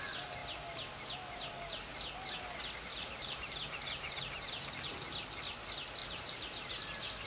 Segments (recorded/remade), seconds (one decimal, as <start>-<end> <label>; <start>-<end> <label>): 0.0-2.9 recorded; 2.9-4.9 remade; 4.9-6.0 recorded; 6.0-6.7 remade; 6.7-7.3 recorded